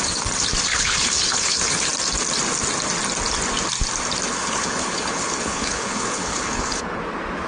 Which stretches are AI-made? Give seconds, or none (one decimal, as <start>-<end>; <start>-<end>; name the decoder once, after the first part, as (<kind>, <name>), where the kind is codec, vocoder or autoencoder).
0.7-1.9 (codec, HILCodec); 4.3-7.0